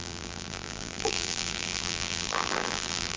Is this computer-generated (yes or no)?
yes